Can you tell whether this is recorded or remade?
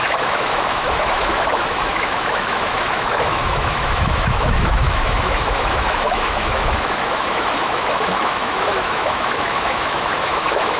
remade